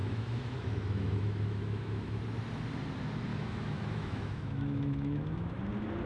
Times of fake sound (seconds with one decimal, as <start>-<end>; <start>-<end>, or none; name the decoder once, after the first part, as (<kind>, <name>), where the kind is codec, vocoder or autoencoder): 0.0-2.2 (autoencoder, DAC-VAE); 3.3-5.6